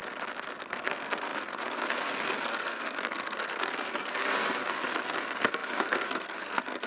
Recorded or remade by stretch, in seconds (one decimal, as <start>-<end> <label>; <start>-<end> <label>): 0.0-0.6 recorded; 0.6-6.9 remade